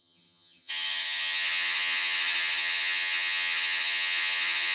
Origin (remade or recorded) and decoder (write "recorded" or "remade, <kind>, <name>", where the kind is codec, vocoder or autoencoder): remade, vocoder, HiFi-GAN